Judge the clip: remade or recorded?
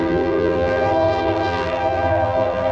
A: remade